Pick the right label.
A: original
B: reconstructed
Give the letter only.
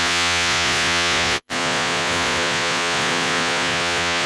B